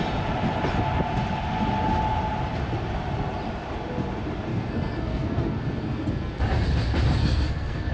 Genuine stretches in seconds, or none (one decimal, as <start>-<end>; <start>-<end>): 0.0-4.5; 6.4-7.2